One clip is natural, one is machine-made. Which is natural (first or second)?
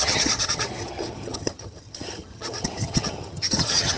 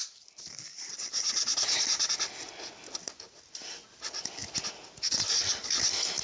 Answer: second